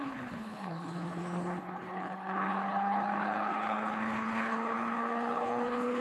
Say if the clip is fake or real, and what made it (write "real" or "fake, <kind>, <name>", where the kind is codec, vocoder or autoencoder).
fake, codec, HILCodec